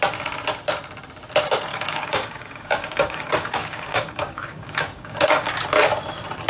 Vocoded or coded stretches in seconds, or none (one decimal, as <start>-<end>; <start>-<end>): 1.7-5.6